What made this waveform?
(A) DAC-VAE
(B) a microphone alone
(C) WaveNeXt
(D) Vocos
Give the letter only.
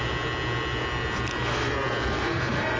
B